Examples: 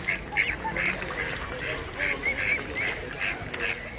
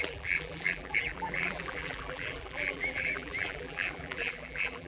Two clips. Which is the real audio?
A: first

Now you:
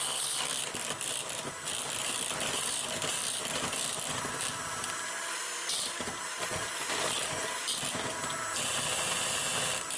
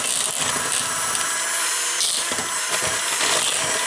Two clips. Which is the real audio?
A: second